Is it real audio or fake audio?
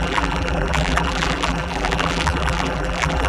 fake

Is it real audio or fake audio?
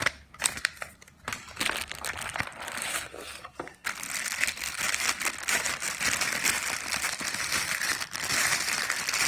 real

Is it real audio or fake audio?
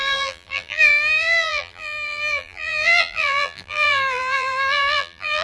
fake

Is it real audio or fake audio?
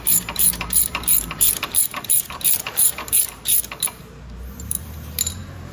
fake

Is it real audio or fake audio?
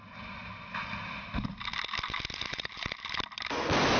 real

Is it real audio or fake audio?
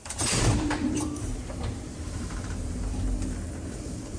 fake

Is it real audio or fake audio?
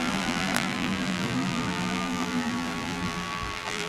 fake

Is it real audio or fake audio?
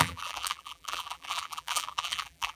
fake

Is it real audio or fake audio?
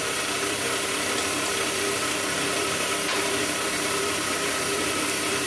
fake